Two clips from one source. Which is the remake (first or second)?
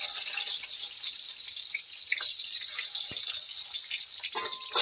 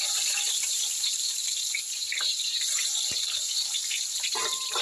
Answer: second